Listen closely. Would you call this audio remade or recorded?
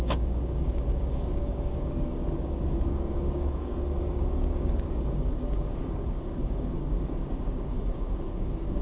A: remade